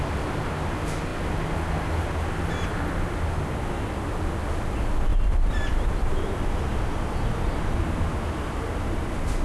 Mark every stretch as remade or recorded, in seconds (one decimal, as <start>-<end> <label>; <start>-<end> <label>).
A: 0.0-9.4 recorded

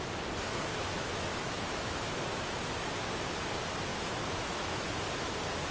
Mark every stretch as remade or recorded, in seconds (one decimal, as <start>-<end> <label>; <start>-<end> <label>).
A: 0.0-0.7 recorded; 0.7-3.1 remade; 3.1-3.9 recorded; 3.9-4.9 remade; 4.9-5.7 recorded

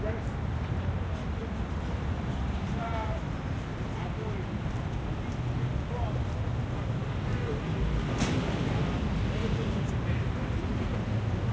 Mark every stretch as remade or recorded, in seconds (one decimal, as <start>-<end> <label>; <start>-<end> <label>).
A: 0.0-1.4 recorded; 1.4-3.8 remade; 3.8-9.4 recorded; 9.4-10.6 remade; 10.6-11.5 recorded

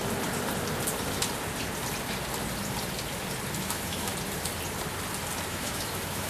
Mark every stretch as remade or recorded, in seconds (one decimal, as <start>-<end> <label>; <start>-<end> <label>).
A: 0.0-3.6 recorded; 3.6-4.1 remade; 4.1-5.5 recorded; 5.5-6.3 remade